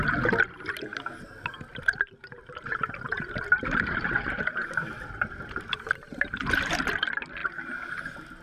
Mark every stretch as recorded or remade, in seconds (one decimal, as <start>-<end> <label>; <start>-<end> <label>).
0.0-1.7 recorded; 1.7-6.7 remade; 6.7-8.4 recorded